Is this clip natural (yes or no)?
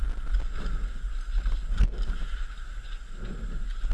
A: yes